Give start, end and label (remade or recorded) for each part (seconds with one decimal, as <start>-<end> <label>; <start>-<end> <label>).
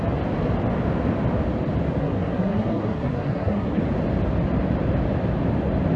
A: 0.0-2.0 recorded; 2.0-3.8 remade; 3.8-6.0 recorded